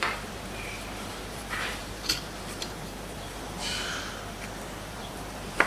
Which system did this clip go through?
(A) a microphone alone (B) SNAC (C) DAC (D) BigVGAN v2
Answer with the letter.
D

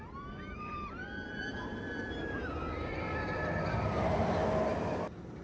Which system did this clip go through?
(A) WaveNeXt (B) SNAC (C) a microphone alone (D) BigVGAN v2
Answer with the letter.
D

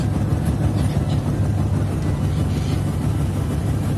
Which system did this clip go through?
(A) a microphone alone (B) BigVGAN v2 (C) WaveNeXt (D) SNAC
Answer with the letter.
A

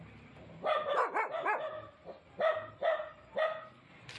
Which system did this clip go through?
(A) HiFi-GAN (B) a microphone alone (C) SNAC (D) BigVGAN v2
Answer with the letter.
B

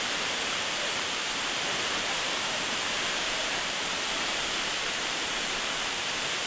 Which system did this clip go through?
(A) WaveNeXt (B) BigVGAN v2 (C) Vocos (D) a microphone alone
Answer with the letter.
B